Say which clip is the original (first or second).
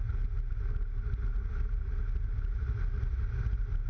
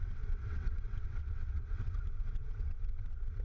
first